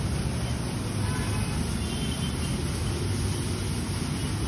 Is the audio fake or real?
real